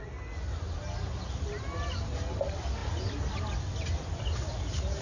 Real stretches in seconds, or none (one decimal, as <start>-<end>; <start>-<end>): 0.0-5.0